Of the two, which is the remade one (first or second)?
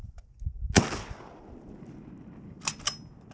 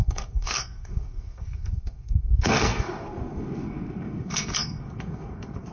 second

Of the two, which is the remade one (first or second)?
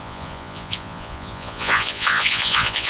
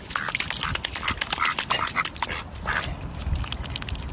first